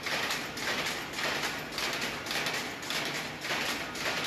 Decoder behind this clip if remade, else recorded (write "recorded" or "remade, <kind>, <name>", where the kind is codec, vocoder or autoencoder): recorded